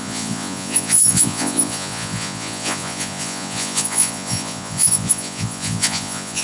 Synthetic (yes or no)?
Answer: yes